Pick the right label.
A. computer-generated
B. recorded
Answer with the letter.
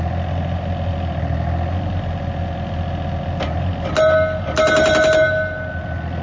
B